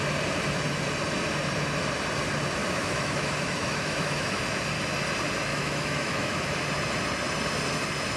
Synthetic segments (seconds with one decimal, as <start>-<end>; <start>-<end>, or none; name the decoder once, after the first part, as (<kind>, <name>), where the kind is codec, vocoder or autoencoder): 2.6-4.4 (autoencoder, DAC-VAE); 5.5-6.6